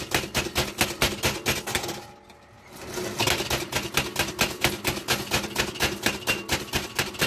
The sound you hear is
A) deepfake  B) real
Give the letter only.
B